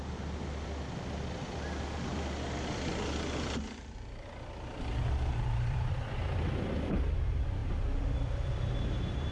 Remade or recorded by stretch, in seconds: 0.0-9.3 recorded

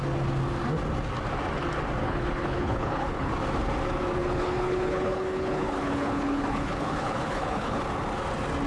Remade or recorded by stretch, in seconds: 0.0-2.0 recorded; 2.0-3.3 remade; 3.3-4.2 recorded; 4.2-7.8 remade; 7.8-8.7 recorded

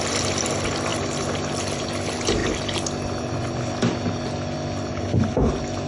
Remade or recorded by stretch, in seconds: 0.0-4.9 recorded; 4.9-5.5 remade; 5.5-5.9 recorded